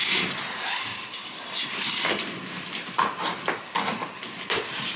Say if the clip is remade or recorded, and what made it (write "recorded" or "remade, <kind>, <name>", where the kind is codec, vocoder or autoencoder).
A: recorded